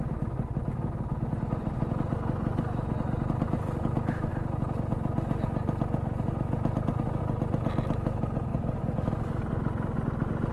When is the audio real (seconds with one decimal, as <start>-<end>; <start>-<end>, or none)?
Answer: 0.0-8.5; 9.1-10.5